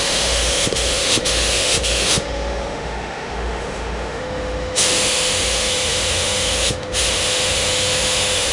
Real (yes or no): no